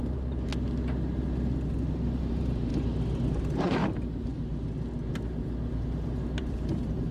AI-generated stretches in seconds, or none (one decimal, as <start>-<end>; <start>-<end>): 0.0-0.5; 2.2-2.7; 3.3-4.3; 5.1-7.1